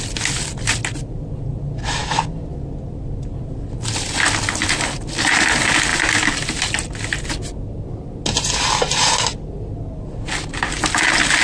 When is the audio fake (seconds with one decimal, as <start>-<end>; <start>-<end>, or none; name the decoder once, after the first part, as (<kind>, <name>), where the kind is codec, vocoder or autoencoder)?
5.9-6.7 (vocoder, BigVGAN v2)